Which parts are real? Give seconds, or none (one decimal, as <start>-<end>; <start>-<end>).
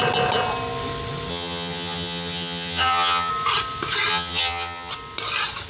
0.0-1.3; 3.3-4.1; 4.9-5.7